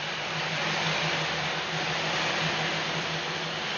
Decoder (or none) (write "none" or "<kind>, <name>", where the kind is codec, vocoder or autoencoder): none